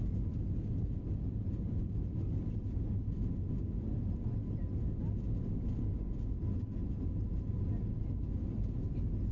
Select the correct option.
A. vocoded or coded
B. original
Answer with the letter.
B